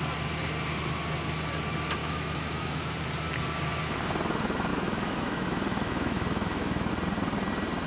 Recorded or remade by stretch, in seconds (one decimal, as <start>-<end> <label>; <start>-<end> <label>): 0.0-2.0 recorded; 2.0-2.8 remade; 2.8-4.7 recorded; 4.7-6.9 remade; 6.9-7.9 recorded